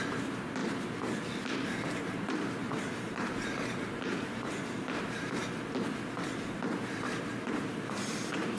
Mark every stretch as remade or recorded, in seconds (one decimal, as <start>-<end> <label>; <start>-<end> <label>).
0.0-5.4 remade; 5.4-6.9 recorded; 6.9-8.6 remade